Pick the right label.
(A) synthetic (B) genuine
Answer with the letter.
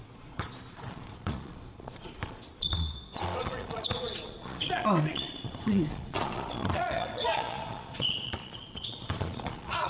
A